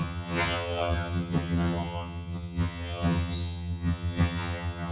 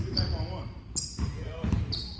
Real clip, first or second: second